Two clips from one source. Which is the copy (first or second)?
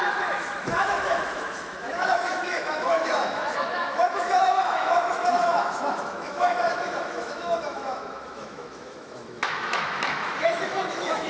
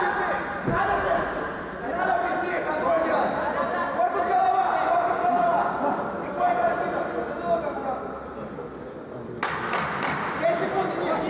first